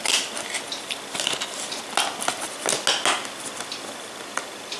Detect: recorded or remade recorded